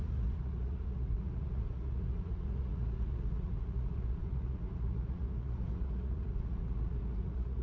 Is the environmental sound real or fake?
fake